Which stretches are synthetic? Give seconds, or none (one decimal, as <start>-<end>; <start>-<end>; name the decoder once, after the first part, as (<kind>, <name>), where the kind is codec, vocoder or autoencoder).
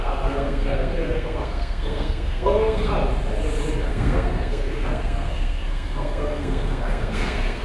0.0-2.9 (codec, SNAC); 3.9-7.6